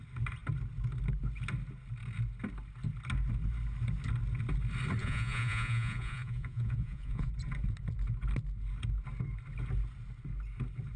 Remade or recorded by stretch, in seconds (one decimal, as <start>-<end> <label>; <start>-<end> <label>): 0.0-5.0 recorded; 5.0-7.3 remade; 7.3-11.0 recorded